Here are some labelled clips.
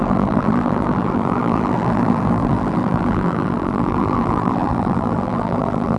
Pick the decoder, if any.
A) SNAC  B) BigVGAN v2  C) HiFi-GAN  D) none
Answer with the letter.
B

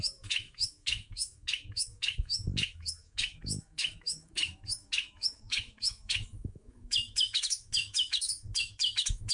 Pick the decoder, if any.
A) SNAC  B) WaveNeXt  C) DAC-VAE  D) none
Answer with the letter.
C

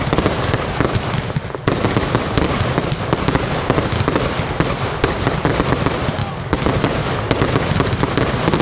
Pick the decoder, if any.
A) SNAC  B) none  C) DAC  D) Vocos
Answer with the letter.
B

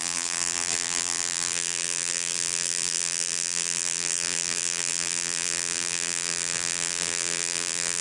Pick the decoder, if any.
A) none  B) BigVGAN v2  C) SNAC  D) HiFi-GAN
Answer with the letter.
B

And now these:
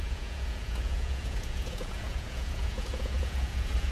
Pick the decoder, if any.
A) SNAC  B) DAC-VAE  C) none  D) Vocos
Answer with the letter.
D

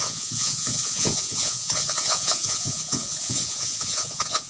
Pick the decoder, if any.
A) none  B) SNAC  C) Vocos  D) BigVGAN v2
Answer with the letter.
C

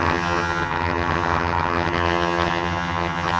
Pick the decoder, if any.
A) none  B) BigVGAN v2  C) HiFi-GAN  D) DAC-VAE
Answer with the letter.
C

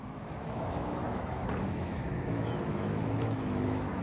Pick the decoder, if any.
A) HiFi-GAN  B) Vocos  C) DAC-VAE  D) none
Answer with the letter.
C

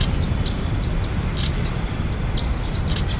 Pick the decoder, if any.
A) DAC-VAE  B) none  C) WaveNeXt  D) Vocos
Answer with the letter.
B